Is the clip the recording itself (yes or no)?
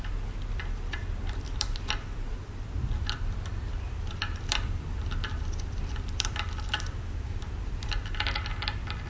no